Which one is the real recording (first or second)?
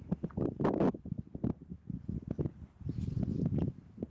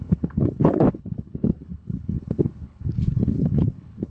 first